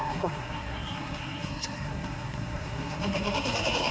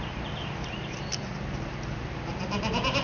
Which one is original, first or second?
second